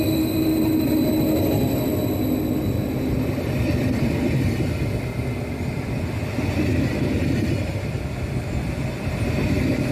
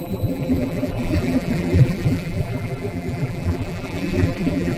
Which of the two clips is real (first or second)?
first